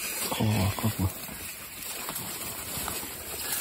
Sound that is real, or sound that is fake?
fake